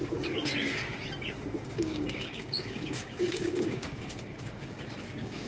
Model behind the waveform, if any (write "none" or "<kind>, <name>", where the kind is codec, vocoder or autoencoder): codec, DAC